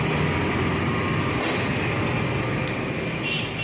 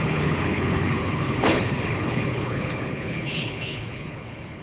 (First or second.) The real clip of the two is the first